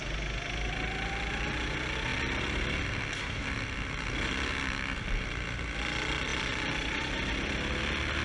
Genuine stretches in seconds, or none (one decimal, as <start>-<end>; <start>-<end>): 0.0-8.2